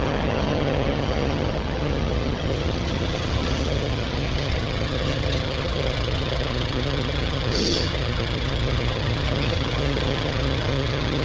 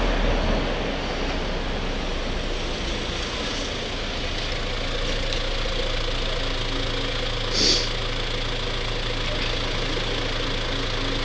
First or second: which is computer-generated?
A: first